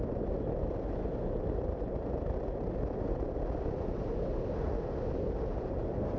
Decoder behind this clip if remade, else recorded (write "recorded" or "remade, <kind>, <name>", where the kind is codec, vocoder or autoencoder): recorded